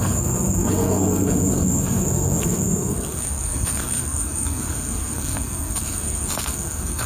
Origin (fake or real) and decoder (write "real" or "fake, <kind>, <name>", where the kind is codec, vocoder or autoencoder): fake, codec, SNAC